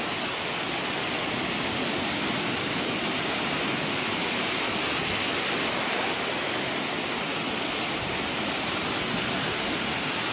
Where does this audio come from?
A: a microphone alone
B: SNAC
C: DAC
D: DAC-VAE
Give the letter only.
A